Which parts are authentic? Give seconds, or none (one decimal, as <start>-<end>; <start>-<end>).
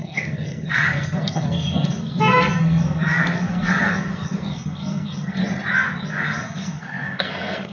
5.4-6.1